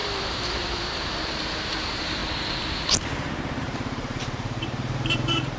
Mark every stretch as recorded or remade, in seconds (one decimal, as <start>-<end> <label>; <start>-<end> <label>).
0.0-2.2 remade; 2.2-3.6 recorded; 3.6-5.6 remade